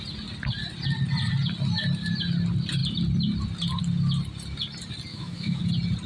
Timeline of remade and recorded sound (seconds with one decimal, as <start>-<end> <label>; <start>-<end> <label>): 0.0-5.1 recorded; 5.1-5.6 remade; 5.6-6.1 recorded